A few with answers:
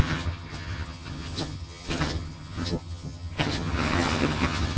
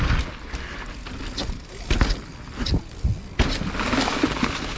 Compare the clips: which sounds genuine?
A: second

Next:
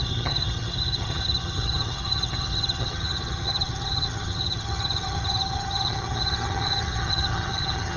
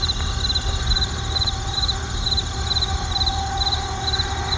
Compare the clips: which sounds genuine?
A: second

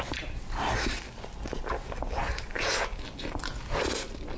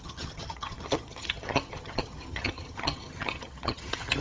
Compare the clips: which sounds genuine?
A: first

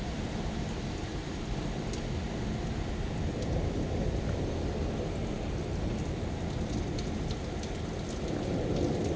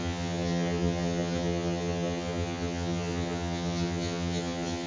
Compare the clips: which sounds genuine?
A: first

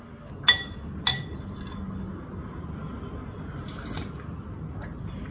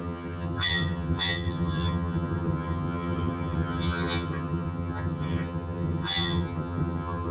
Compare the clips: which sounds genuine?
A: first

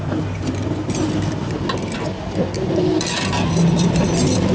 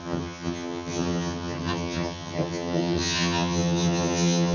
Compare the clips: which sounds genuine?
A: first